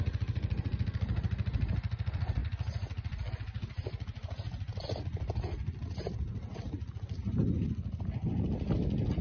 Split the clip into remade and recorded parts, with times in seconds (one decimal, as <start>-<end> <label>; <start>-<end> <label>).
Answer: 0.0-9.2 recorded